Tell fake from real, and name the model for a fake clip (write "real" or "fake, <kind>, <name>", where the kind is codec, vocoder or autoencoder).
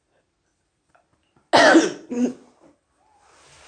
real